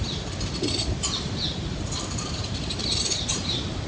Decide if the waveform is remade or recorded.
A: remade